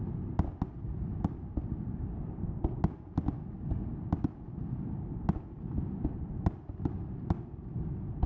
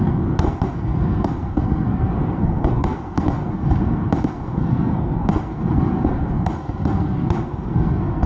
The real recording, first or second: first